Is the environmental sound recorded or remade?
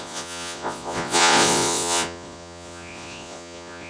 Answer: remade